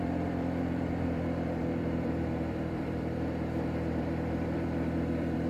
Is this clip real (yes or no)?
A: no